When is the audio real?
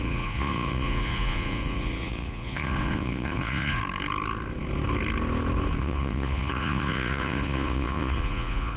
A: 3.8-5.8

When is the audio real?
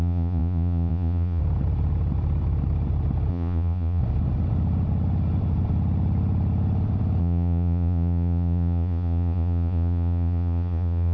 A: 1.4-3.3; 4.0-7.2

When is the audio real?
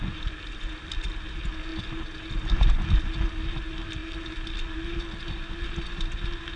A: 0.0-6.6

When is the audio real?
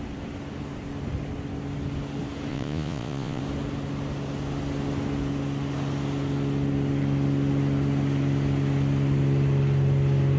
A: 0.0-2.5; 3.4-10.4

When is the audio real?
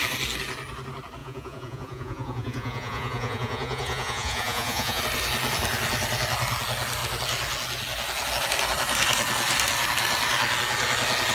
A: 0.0-1.2; 5.0-11.3